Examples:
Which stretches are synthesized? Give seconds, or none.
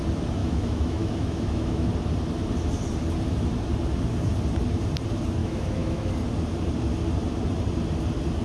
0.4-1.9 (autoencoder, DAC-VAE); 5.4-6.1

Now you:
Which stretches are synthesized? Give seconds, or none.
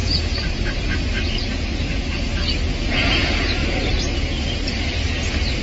0.0-2.3 (vocoder, Vocos); 2.8-3.6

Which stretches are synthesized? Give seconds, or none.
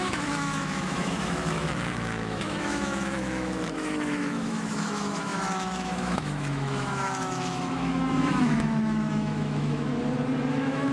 0.0-9.9 (autoencoder, DAC-VAE); 10.5-10.9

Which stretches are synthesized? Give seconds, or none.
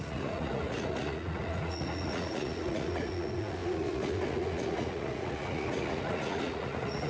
0.0-7.1 (vocoder, Vocos)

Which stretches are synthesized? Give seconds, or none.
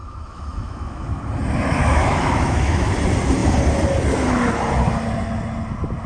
0.0-1.2 (autoencoder, DAC-VAE); 1.8-2.9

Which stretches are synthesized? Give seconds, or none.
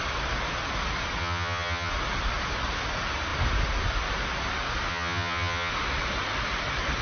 1.2-1.9 (vocoder, HiFi-GAN); 4.9-5.7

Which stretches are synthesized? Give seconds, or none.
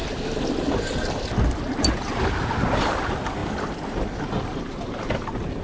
none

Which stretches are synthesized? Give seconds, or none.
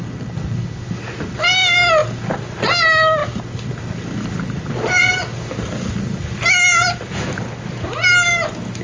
none